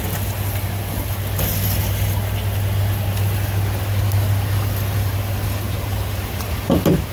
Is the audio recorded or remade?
recorded